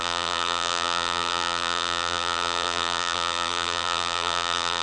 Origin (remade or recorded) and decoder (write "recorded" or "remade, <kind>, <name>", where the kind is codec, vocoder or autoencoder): remade, vocoder, BigVGAN v2